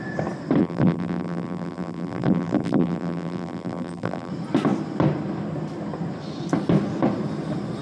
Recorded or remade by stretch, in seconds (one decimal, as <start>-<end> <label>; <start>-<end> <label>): 0.0-0.6 recorded; 0.6-4.3 remade; 4.3-7.8 recorded